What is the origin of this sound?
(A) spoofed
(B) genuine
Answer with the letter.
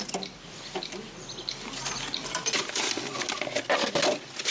B